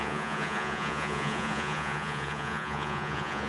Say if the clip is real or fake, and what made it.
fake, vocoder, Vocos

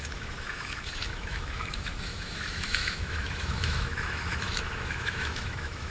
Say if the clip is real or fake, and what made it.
fake, autoencoder, DAC-VAE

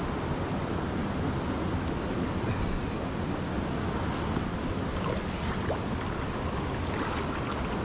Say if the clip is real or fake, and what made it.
real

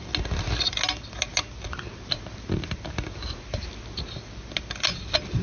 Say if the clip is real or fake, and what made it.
real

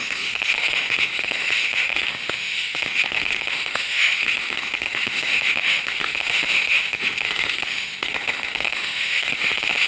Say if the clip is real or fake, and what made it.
fake, autoencoder, DAC-VAE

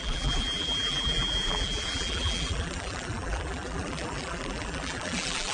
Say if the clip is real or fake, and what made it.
fake, vocoder, BigVGAN v2